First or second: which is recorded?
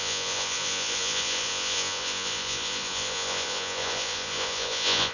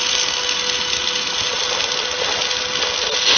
second